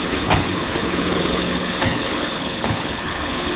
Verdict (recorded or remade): remade